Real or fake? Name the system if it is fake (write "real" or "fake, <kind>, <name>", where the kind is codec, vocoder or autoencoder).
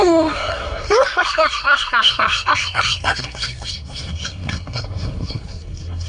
fake, codec, SNAC